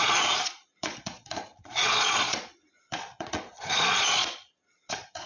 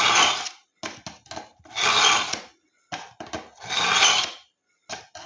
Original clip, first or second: second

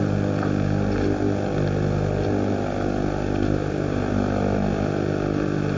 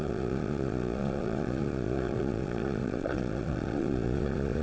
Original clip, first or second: first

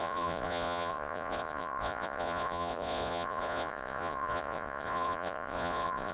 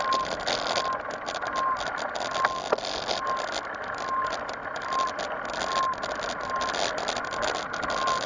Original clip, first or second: second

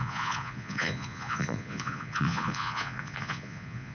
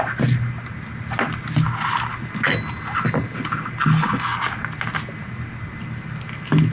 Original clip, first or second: second